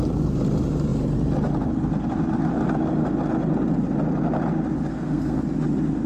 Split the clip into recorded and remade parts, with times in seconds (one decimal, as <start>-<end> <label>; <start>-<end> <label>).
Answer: 0.0-4.9 recorded; 4.9-5.4 remade; 5.4-6.1 recorded

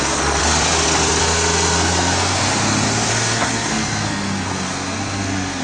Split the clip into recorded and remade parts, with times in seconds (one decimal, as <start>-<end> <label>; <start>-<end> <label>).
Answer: 0.0-0.4 remade; 0.4-1.2 recorded; 1.2-2.4 remade; 2.4-3.1 recorded; 3.1-5.6 remade

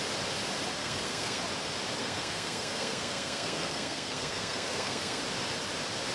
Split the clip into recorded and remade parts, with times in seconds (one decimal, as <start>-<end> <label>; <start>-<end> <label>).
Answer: 0.0-0.8 recorded; 0.8-1.4 remade; 1.4-2.0 recorded; 2.0-5.2 remade; 5.2-6.1 recorded

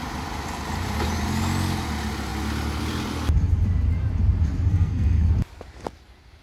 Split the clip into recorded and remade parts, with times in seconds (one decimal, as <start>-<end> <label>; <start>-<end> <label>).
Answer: 0.0-4.7 recorded; 4.7-5.3 remade; 5.3-6.4 recorded

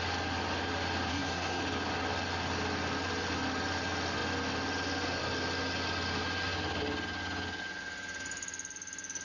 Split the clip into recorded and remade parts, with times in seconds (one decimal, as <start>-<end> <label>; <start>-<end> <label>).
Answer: 0.0-1.1 recorded; 1.1-1.6 remade; 1.6-9.2 recorded

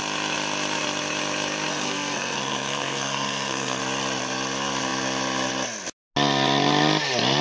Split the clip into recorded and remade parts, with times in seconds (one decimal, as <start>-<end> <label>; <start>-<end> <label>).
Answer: 0.0-1.7 recorded; 1.7-3.8 remade; 3.8-7.4 recorded

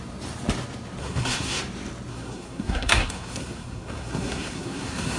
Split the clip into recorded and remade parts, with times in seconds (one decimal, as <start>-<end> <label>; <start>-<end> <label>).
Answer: 0.0-1.0 recorded; 1.0-1.6 remade; 1.6-2.1 recorded; 2.1-5.2 remade

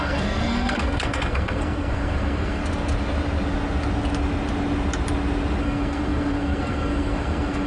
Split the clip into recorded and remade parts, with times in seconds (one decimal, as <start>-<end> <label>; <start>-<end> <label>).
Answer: 0.0-2.6 remade; 2.6-5.6 recorded; 5.6-7.7 remade